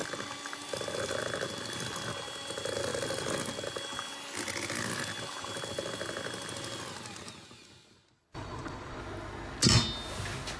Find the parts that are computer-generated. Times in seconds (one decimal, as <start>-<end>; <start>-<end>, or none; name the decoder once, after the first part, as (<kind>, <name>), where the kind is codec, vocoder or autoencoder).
8.2-9.0 (vocoder, Vocos)